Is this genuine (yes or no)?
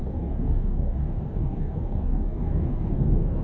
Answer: no